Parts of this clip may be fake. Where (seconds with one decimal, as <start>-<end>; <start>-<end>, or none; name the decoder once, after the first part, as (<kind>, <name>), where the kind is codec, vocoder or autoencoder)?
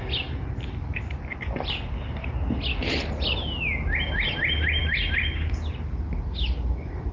none